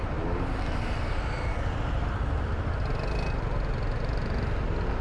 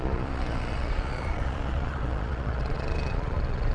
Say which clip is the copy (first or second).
second